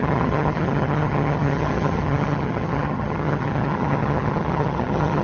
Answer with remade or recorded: remade